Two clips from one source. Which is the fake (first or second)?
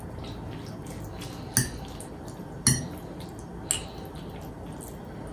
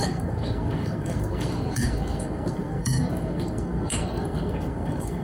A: second